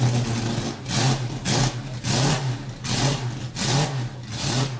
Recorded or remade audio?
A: recorded